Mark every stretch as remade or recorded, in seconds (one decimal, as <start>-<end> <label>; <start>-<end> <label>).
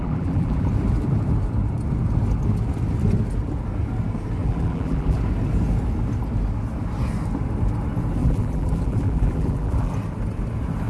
0.0-0.7 remade; 0.7-4.4 recorded; 4.4-5.2 remade; 5.2-8.2 recorded; 8.2-9.9 remade; 9.9-10.9 recorded